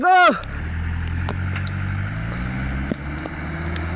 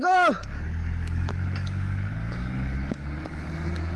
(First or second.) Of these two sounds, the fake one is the second